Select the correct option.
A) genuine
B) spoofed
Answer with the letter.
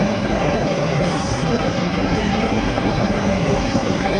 B